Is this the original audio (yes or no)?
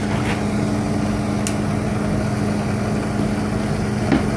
yes